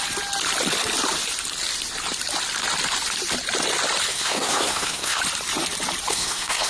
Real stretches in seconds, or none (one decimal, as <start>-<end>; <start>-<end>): 0.0-4.1; 5.2-6.1